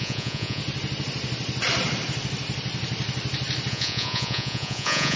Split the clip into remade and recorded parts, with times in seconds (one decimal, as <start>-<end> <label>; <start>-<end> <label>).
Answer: 0.0-0.6 remade; 0.6-3.7 recorded; 3.7-5.2 remade